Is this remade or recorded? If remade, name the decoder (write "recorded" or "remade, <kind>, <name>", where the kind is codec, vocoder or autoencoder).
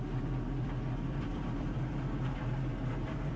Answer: remade, vocoder, BigVGAN v2